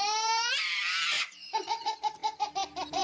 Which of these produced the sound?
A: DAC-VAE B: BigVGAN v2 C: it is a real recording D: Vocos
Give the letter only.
C